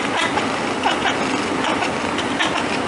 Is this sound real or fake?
real